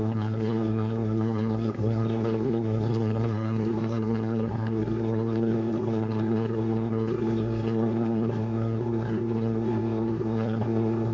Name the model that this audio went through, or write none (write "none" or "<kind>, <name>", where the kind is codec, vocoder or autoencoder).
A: codec, SNAC